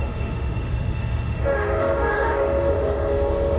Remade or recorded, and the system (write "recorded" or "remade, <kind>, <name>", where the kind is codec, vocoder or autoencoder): remade, autoencoder, DAC-VAE